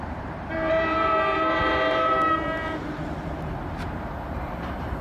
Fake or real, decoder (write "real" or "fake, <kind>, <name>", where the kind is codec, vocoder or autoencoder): fake, vocoder, BigVGAN v2